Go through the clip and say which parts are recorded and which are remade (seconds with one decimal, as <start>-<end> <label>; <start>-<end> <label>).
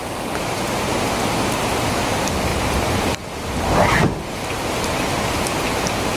0.0-6.2 recorded